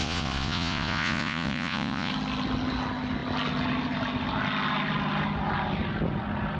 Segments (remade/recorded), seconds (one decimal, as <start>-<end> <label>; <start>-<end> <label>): 0.0-2.1 remade; 2.1-6.6 recorded